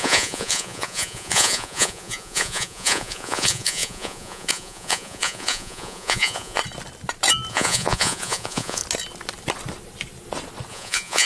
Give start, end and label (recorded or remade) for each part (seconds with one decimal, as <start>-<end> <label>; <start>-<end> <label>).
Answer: 0.0-6.6 remade; 6.6-7.5 recorded; 7.5-8.8 remade; 8.8-10.7 recorded; 10.7-11.2 remade